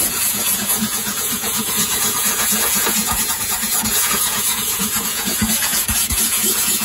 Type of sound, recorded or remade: remade